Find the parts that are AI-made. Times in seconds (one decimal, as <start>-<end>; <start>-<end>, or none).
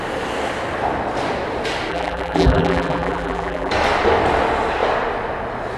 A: 1.9-3.7